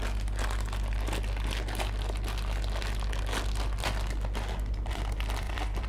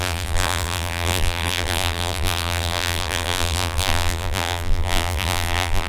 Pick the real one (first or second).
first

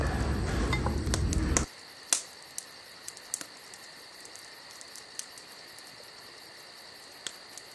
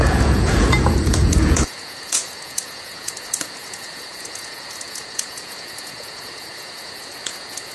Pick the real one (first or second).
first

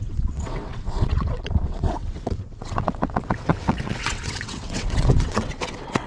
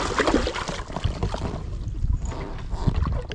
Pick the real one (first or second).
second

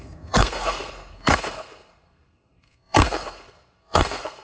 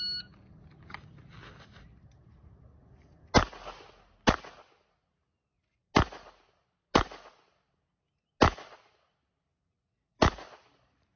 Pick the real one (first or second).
second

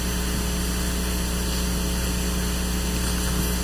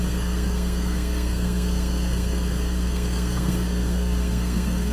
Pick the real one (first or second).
first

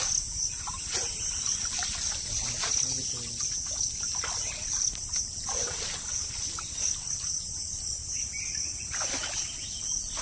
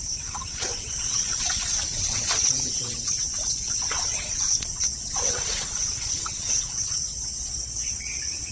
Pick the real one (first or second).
first